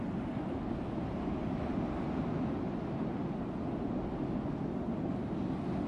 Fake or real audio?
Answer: real